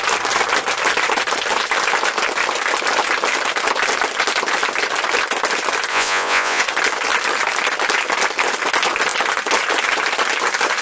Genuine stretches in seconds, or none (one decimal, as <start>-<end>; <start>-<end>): 0.0-5.9; 6.6-10.8